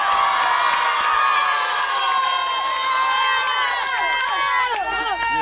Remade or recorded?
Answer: recorded